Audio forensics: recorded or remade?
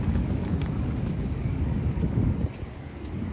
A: remade